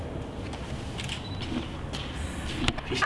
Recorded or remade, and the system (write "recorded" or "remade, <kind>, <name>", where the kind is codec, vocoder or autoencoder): recorded